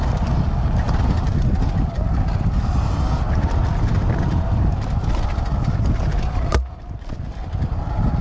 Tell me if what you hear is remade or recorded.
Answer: recorded